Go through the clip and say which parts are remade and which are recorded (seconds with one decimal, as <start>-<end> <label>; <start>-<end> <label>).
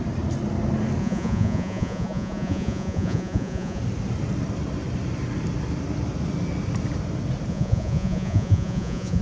0.0-1.0 recorded; 1.0-3.8 remade; 3.8-7.5 recorded; 7.5-9.2 remade